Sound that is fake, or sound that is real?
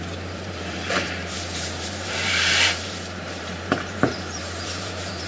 fake